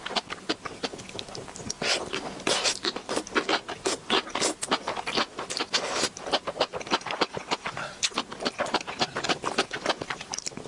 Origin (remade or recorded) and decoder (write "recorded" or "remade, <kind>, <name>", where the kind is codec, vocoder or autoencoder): recorded